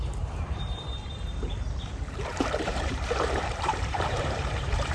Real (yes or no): no